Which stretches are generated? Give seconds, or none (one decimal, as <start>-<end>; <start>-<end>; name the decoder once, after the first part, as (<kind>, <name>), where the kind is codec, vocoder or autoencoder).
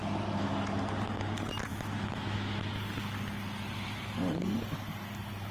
1.7-2.6 (autoencoder, DAC-VAE)